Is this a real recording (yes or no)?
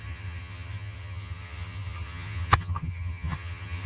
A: no